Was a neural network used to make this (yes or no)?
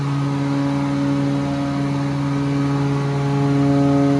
no